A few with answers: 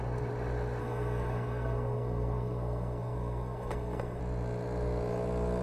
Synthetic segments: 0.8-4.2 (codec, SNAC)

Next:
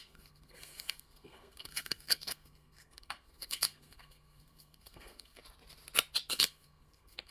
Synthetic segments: 0.0-5.4 (codec, SNAC); 6.3-7.3

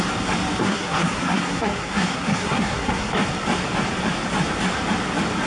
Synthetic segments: 0.6-3.1 (codec, SNAC)

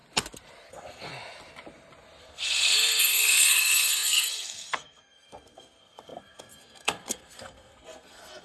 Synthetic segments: 0.7-1.1 (codec, SNAC); 2.2-8.4

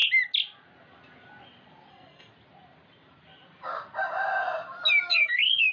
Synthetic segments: 1.9-2.3 (codec, SNAC); 5.1-5.7